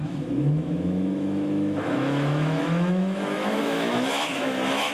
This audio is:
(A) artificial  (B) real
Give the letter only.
A